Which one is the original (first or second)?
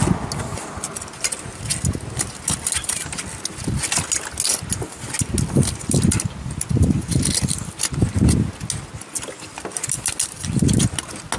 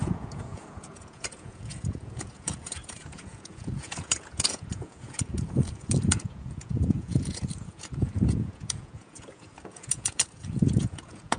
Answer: first